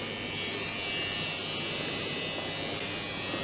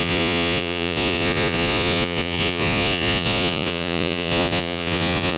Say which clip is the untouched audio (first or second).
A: first